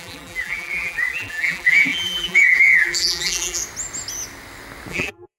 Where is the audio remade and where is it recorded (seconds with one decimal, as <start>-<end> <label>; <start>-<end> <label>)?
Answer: 0.0-3.6 remade; 3.6-4.9 recorded; 4.9-5.4 remade

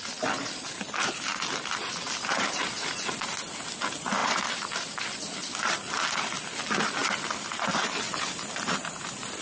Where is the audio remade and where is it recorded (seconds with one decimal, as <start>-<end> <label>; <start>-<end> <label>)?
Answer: 0.0-7.0 recorded; 7.0-8.9 remade; 8.9-9.4 recorded

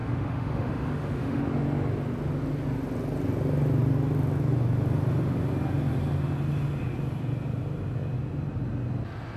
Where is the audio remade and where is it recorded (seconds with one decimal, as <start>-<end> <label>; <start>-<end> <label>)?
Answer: 0.0-1.4 remade; 1.4-9.4 recorded

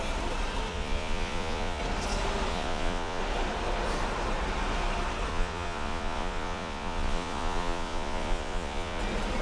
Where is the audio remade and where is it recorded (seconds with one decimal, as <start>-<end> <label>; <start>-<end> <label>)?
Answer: 0.0-0.7 recorded; 0.7-1.8 remade; 1.8-2.5 recorded; 2.5-3.2 remade; 3.2-5.3 recorded; 5.3-9.0 remade; 9.0-9.4 recorded